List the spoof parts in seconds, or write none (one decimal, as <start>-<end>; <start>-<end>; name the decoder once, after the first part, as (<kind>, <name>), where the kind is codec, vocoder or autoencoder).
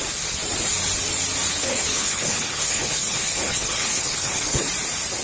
1.5-4.6 (codec, HILCodec)